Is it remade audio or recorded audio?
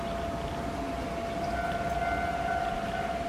recorded